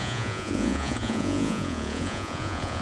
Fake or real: fake